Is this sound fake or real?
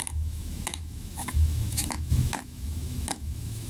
fake